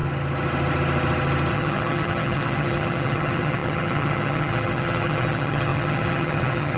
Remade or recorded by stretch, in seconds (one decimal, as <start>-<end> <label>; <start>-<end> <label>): 0.0-1.5 recorded; 1.5-6.8 remade